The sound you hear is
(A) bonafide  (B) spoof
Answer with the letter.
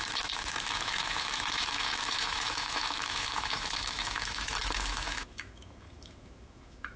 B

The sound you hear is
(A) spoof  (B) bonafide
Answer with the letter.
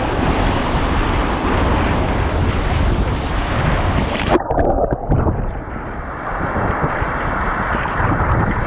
B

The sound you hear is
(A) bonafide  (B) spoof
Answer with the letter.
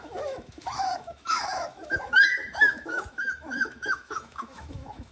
B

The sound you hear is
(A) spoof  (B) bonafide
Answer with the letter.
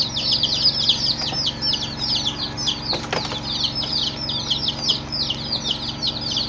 B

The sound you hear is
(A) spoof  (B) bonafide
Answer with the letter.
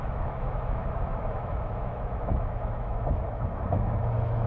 A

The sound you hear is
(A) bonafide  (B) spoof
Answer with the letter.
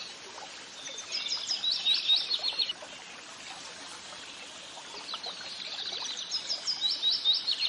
A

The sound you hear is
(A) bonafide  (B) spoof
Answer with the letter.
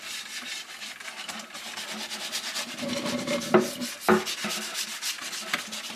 A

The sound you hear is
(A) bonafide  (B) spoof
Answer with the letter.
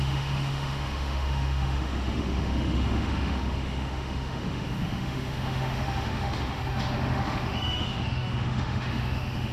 B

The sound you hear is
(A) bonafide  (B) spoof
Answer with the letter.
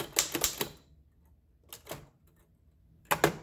A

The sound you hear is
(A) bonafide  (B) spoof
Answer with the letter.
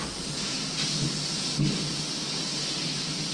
A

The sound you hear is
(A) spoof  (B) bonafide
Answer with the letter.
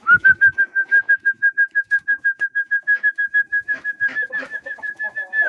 A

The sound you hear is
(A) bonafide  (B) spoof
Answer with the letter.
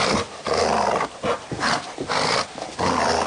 A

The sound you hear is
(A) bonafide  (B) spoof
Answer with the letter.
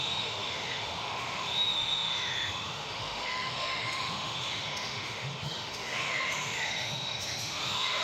B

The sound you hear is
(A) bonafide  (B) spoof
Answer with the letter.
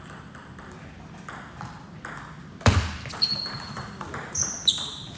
A